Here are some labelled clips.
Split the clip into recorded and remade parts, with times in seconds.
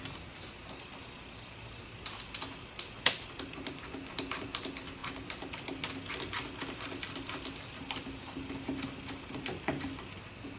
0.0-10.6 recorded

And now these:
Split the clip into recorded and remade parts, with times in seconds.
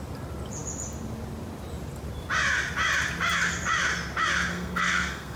0.0-4.5 recorded; 4.5-5.4 remade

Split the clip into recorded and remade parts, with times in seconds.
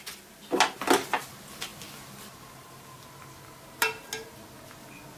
0.0-5.2 recorded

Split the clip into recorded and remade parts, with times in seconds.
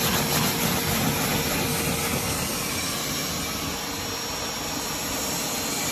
0.0-5.9 recorded